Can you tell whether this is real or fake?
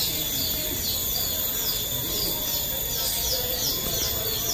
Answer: real